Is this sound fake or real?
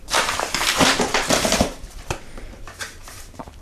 fake